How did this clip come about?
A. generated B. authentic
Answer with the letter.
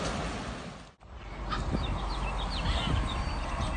B